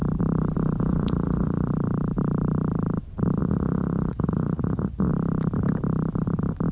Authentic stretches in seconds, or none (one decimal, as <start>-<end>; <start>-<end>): 0.0-0.9; 1.7-3.4; 5.1-6.7